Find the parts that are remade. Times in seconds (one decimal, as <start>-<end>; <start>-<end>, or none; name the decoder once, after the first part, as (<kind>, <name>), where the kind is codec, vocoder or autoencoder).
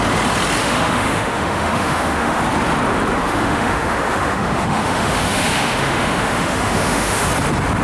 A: 0.6-2.4 (autoencoder, DAC-VAE); 3.2-7.3